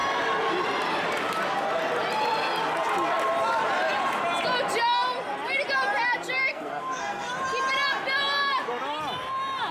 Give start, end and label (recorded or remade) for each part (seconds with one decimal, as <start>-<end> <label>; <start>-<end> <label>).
0.0-6.5 recorded; 6.5-7.3 remade; 7.3-9.7 recorded